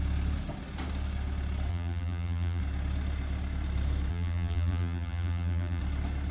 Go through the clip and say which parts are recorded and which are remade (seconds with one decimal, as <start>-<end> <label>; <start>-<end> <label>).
0.0-1.7 recorded; 1.7-2.6 remade; 2.6-4.1 recorded; 4.1-5.8 remade; 5.8-6.3 recorded